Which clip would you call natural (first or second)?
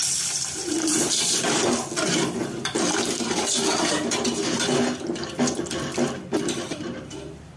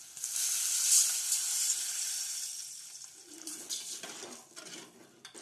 second